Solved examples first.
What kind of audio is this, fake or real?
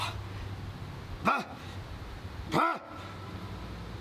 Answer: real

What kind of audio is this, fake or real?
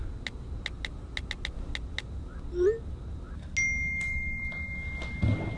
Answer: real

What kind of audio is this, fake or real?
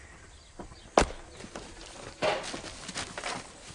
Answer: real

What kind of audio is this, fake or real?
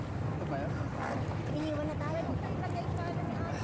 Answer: real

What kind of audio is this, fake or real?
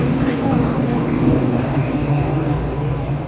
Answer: fake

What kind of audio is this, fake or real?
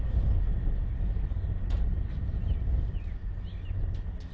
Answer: real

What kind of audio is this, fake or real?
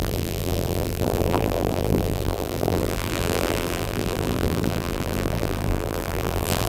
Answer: fake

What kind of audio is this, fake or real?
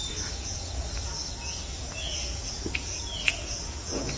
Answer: fake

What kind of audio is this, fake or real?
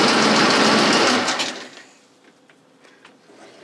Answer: real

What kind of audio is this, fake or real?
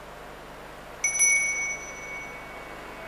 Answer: real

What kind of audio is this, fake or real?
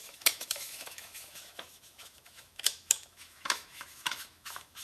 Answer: fake